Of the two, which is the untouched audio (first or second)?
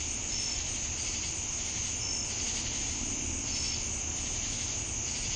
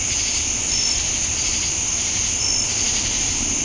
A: first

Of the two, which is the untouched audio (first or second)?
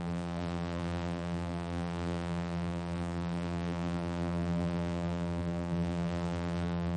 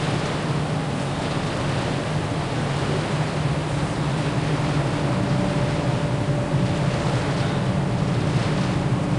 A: second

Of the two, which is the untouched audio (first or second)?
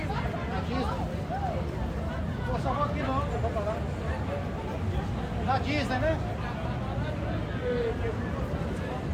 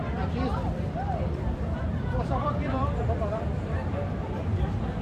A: first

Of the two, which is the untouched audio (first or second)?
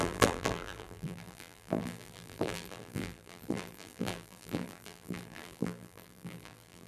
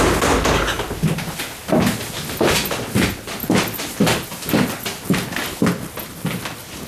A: second